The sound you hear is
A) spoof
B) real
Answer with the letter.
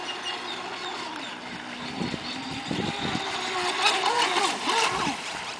B